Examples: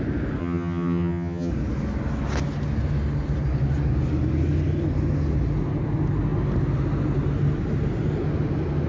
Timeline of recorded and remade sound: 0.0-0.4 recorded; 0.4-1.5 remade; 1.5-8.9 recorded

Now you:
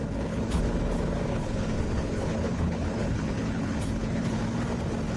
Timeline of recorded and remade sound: 0.0-0.6 remade; 0.6-1.3 recorded; 1.3-4.4 remade; 4.4-5.2 recorded

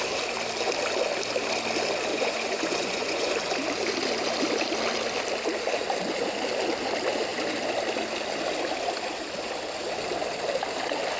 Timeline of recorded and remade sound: 0.0-2.1 recorded; 2.1-3.3 remade; 3.3-11.2 recorded

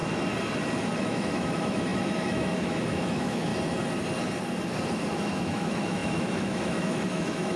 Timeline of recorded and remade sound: 0.0-1.0 recorded; 1.0-3.5 remade; 3.5-5.1 recorded; 5.1-7.6 remade

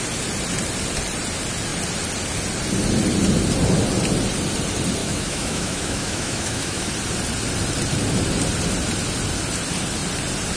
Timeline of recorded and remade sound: 0.0-5.0 recorded; 5.0-6.9 remade; 6.9-10.6 recorded

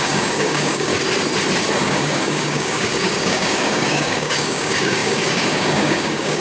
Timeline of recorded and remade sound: 0.0-0.9 remade; 0.9-1.8 recorded; 1.8-6.4 remade

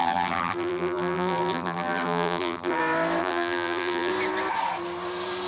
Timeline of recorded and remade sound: 0.0-2.8 remade; 2.8-3.2 recorded; 3.2-4.1 remade; 4.1-5.5 recorded

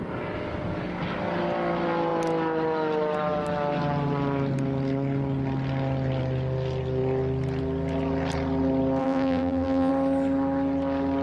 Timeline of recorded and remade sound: 0.0-9.0 recorded; 9.0-9.9 remade; 9.9-11.2 recorded